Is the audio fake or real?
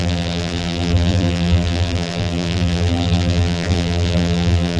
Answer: fake